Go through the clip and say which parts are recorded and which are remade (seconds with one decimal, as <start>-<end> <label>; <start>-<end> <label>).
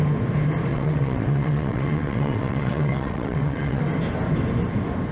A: 0.0-0.7 recorded; 0.7-3.8 remade; 3.8-5.1 recorded